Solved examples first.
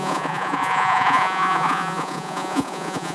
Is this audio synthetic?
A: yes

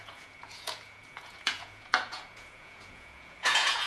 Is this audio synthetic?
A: yes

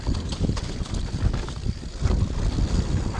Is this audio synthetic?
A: no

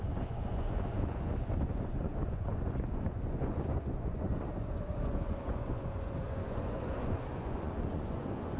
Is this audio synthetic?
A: yes